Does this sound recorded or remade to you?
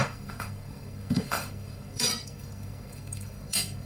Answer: remade